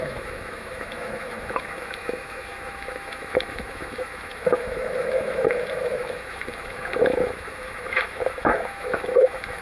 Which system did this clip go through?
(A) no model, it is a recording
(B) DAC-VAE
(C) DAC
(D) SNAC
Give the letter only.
B